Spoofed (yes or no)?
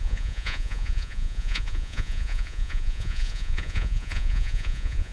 yes